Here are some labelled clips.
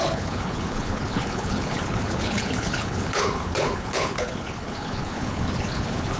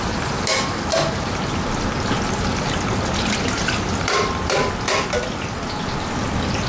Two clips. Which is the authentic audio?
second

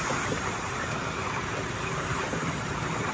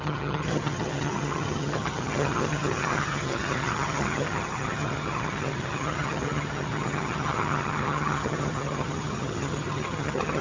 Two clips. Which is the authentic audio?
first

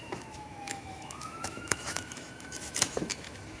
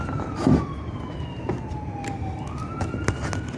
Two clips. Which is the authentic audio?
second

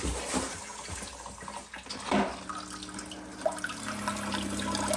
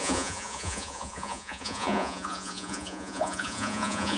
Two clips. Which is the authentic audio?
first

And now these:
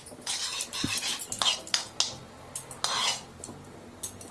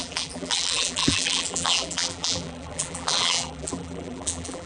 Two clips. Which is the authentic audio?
first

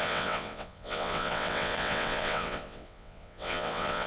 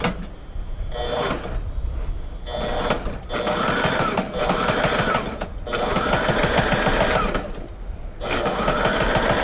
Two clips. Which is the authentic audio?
second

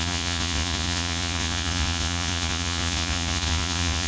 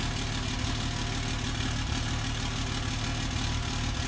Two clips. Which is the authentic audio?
second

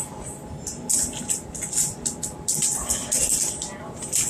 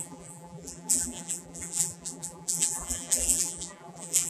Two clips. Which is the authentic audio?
first